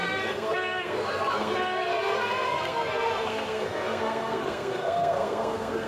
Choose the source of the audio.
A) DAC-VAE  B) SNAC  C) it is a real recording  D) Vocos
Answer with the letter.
B